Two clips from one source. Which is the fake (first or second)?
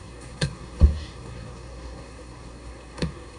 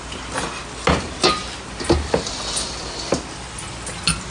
first